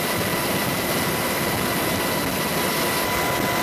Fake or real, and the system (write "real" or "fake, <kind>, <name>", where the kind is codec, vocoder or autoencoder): real